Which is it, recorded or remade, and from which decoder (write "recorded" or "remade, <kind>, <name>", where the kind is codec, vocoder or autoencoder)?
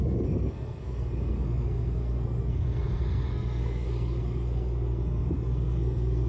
remade, codec, SNAC